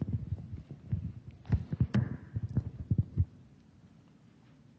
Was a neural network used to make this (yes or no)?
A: no